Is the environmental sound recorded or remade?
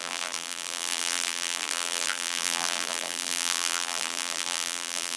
remade